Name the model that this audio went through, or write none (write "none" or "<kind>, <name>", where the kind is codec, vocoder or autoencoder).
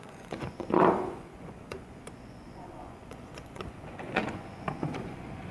vocoder, Vocos